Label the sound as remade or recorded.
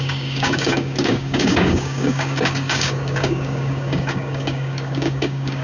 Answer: remade